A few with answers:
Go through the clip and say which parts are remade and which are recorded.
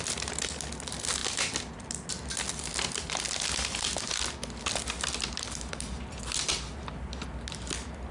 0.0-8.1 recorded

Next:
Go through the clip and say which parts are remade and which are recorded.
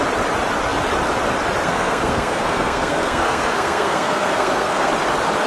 0.0-1.6 recorded; 1.6-4.9 remade; 4.9-5.5 recorded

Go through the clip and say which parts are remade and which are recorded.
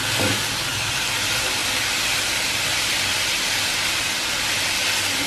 0.0-5.3 recorded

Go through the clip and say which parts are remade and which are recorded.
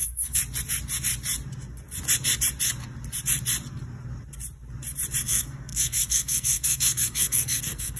0.0-0.4 remade; 0.4-5.2 recorded; 5.2-8.0 remade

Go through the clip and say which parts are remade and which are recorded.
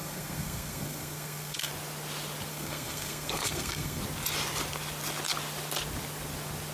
0.0-1.7 remade; 1.7-2.5 recorded; 2.5-4.0 remade; 4.0-6.7 recorded